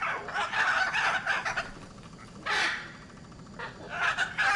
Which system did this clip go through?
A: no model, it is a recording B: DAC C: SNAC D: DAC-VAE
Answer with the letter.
A